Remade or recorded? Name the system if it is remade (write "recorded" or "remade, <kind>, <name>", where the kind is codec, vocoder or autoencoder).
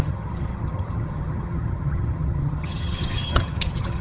remade, vocoder, HiFi-GAN